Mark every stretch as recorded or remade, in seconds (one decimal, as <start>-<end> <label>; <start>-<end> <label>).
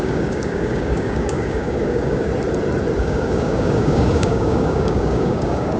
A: 0.0-2.3 remade; 2.3-3.0 recorded; 3.0-5.8 remade